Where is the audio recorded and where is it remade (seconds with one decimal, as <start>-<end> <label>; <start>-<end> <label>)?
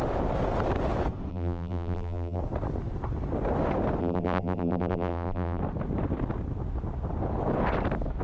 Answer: 0.0-1.3 recorded; 1.3-2.4 remade; 2.4-4.0 recorded; 4.0-5.6 remade; 5.6-8.2 recorded